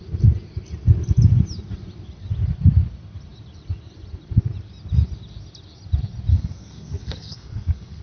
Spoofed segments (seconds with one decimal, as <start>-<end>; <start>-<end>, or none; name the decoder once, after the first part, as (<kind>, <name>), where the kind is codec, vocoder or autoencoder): 6.3-8.0 (codec, SNAC)